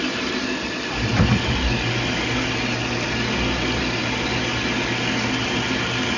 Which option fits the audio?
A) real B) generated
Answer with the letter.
A